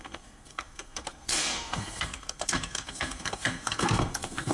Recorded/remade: remade